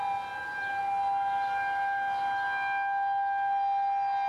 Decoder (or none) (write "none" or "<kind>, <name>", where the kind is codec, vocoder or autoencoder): none